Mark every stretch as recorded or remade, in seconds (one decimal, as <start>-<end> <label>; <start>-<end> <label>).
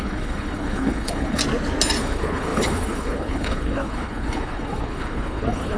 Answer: 0.0-1.4 remade; 1.4-2.0 recorded; 2.0-5.8 remade